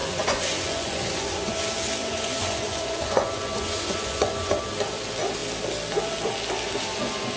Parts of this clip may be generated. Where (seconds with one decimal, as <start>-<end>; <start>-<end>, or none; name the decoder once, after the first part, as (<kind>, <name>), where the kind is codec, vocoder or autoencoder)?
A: 0.0-1.6 (vocoder, Vocos); 2.0-4.6